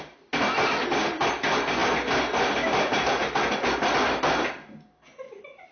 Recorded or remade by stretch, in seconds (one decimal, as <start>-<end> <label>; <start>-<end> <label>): 0.0-5.7 recorded